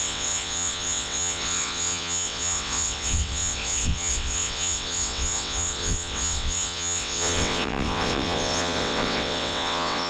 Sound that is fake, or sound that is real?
fake